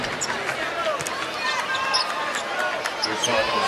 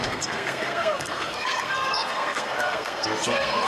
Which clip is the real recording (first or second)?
first